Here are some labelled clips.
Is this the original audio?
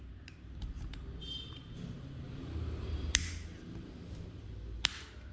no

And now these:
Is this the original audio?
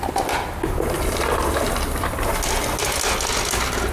yes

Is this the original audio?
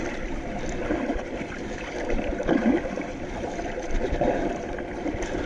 no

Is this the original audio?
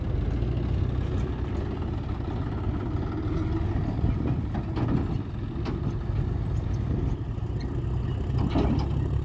yes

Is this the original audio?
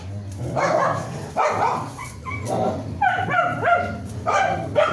yes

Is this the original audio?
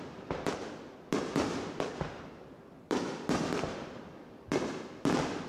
no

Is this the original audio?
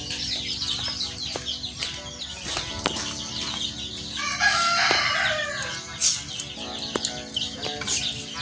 no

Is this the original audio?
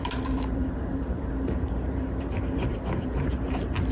no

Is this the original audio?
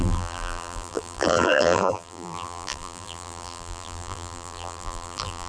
no